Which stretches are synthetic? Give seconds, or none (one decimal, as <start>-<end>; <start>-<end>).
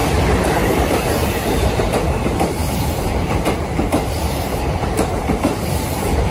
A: 0.0-6.3